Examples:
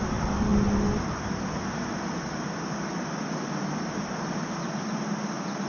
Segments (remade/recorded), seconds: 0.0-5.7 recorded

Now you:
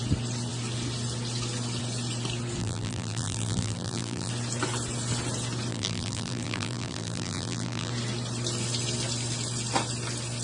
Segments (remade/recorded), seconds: 0.0-2.6 recorded; 2.6-4.3 remade; 4.3-5.7 recorded; 5.7-7.9 remade; 7.9-10.4 recorded